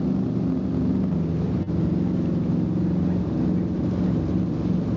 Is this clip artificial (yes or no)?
no